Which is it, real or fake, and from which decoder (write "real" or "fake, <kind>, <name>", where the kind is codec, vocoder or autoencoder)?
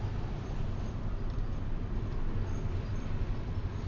real